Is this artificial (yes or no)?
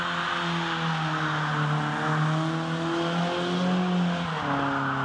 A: no